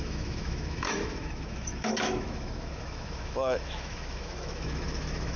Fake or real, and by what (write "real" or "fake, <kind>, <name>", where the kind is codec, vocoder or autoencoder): fake, autoencoder, DAC-VAE